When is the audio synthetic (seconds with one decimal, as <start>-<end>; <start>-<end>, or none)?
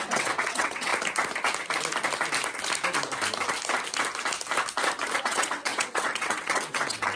0.0-0.9; 5.2-7.2